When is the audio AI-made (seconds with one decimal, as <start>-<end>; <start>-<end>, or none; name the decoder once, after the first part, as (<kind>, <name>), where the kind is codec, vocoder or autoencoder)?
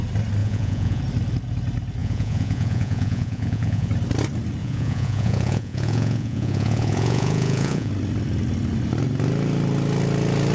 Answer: 0.4-1.0 (vocoder, Vocos); 2.0-3.9; 4.6-7.9